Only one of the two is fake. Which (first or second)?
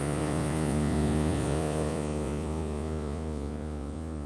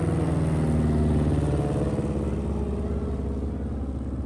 first